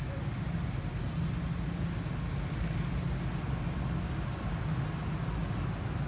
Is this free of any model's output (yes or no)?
yes